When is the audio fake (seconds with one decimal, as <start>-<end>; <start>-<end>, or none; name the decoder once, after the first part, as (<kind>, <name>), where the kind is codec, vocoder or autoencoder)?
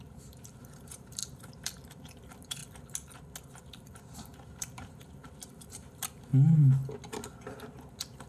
0.0-2.6 (vocoder, BigVGAN v2); 3.5-6.3